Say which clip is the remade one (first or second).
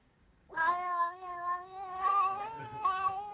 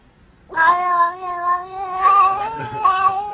first